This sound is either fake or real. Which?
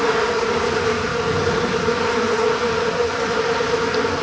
real